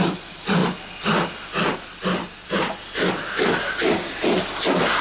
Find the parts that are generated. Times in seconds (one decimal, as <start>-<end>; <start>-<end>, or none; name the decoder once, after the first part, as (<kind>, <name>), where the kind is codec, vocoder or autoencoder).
none